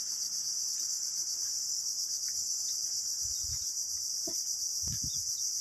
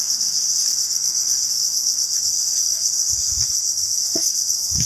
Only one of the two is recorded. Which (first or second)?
first